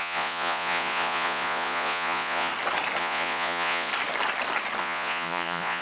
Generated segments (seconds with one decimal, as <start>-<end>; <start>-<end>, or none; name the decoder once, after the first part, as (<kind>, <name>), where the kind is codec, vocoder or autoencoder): 0.0-2.5 (vocoder, Vocos); 3.0-3.9; 4.8-5.8